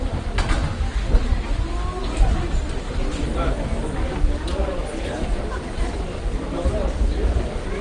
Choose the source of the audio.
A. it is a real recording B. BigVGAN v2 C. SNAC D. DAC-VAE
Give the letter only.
A